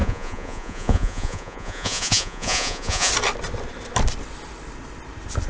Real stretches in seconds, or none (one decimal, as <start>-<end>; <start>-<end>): 3.1-5.5